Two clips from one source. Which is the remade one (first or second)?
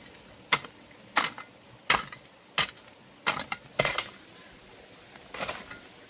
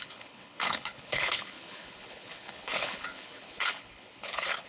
second